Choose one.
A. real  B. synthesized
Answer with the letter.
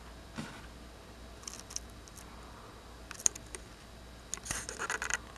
A